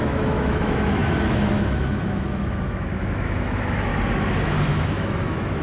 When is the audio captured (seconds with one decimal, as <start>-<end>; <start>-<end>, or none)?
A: 3.9-4.7